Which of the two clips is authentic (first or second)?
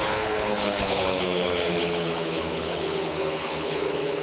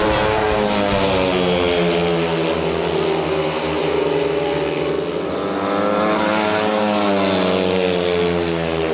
second